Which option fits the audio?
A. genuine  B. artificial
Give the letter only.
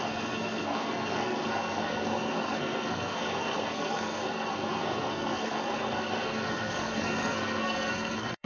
B